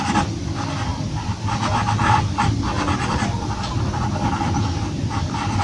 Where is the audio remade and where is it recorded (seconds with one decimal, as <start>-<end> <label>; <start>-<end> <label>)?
0.0-5.6 recorded